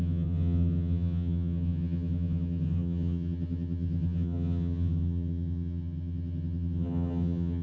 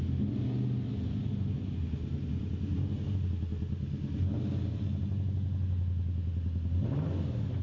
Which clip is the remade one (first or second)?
first